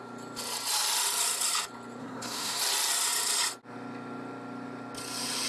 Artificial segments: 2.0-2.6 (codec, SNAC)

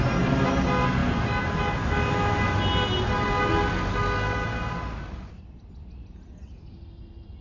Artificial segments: none

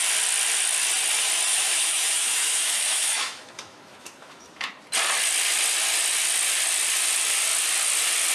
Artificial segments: 1.5-4.7 (autoencoder, DAC-VAE)

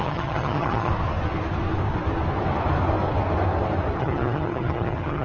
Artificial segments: 0.0-0.9 (vocoder, HiFi-GAN); 4.0-5.2

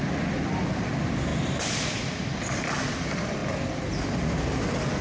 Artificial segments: none

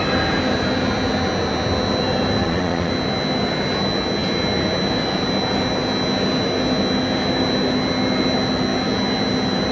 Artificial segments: 2.4-2.9 (vocoder, Vocos)

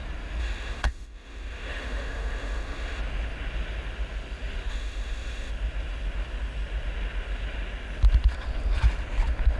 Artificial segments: 0.4-3.0 (autoencoder, DAC-VAE); 4.7-5.5

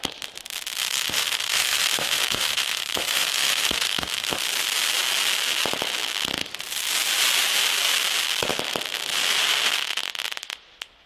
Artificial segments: 0.8-4.4 (autoencoder, DAC-VAE)